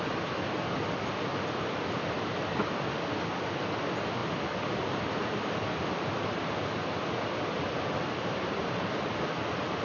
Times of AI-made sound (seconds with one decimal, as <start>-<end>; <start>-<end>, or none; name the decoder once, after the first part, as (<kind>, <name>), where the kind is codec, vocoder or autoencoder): none